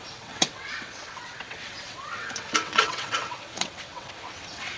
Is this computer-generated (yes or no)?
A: yes